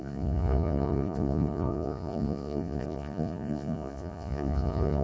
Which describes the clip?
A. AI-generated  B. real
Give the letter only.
A